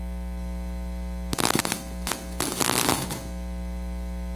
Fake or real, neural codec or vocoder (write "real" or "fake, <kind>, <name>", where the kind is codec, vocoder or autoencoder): real